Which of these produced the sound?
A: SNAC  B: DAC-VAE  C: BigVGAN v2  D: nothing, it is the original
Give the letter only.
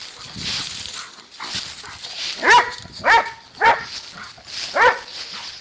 D